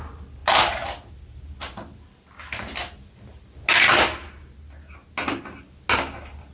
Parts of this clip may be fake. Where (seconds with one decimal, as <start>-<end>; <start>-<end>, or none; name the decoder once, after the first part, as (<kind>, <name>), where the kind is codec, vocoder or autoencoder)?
none